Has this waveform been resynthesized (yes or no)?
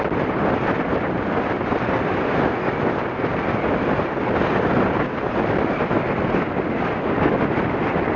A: no